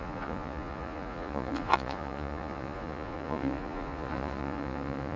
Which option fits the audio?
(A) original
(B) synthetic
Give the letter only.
B